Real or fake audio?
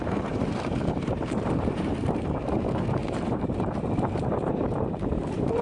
fake